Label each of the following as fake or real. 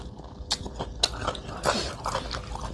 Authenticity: real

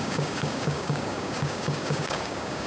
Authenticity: fake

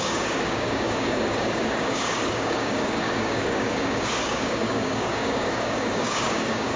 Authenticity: fake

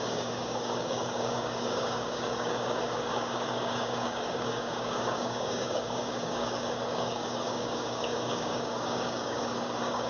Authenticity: fake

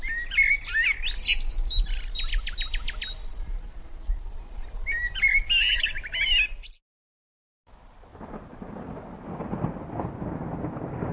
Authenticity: real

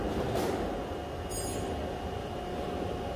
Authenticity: real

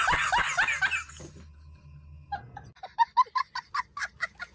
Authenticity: real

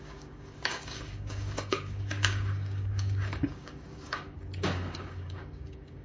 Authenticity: fake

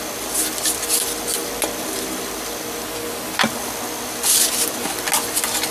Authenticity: real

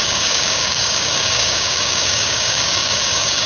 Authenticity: fake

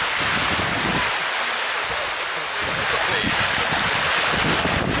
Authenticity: real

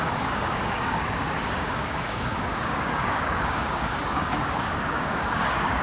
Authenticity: fake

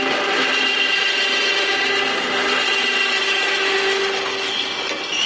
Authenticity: real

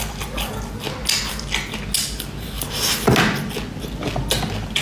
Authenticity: real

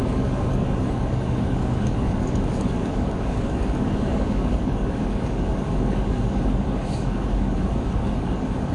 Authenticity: fake